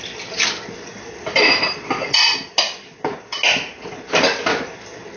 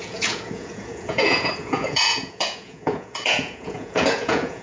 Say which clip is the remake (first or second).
second